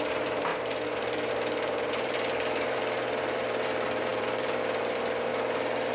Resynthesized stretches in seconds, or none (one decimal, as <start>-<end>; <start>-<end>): 0.0-0.5; 1.3-5.3